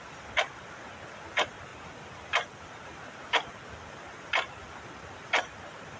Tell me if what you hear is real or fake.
real